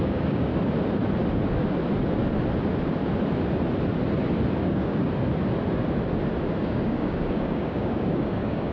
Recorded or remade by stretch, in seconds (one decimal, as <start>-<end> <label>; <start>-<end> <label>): 0.0-0.5 remade; 0.5-4.6 recorded; 4.6-5.0 remade; 5.0-6.6 recorded; 6.6-8.7 remade